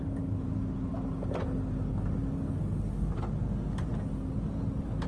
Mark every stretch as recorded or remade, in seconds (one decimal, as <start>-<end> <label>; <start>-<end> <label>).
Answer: 0.0-5.1 recorded